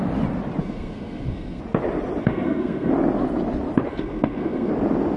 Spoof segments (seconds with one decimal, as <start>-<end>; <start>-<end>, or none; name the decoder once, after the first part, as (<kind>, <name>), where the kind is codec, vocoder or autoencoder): 0.6-1.6 (codec, SNAC); 2.2-2.9; 3.9-4.7